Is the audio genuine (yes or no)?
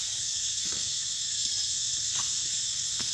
no